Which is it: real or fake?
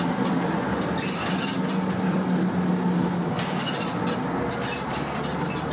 real